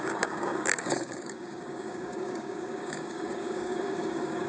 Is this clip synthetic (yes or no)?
yes